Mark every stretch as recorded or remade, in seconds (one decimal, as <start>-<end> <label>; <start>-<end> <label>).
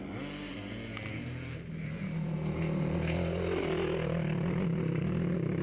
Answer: 0.0-5.6 recorded